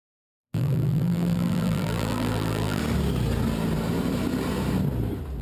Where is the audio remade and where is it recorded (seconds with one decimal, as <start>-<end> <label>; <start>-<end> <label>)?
0.0-2.8 remade; 2.8-5.4 recorded